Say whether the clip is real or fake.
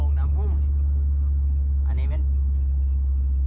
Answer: real